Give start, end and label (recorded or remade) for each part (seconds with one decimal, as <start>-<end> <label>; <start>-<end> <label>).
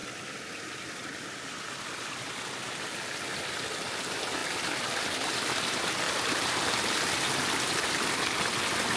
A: 0.0-9.0 recorded